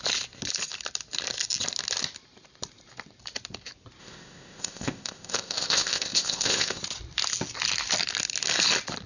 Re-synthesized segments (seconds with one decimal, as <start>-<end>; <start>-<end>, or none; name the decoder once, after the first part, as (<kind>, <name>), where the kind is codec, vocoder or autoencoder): 4.0-6.8 (codec, ZipCodec)